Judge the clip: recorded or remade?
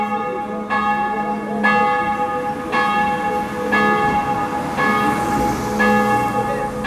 recorded